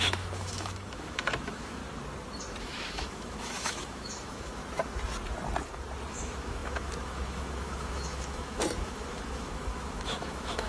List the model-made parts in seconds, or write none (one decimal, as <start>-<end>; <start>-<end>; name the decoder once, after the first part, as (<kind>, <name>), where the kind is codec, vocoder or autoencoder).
0.0-1.8 (autoencoder, DAC-VAE); 2.6-4.6; 6.1-10.7